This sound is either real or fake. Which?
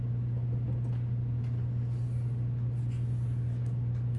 real